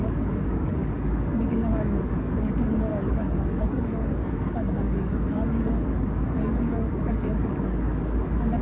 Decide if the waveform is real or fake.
fake